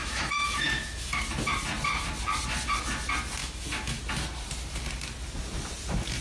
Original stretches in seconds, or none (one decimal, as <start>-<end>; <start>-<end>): 1.2-3.4; 4.0-6.2